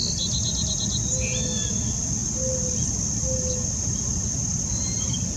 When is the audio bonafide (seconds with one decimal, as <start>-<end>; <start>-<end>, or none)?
0.0-5.4